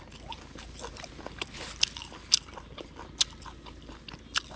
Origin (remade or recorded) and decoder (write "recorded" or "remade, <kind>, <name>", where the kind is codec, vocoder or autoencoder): recorded